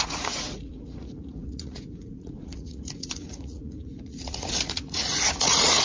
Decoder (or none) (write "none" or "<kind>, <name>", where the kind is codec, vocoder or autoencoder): vocoder, Vocos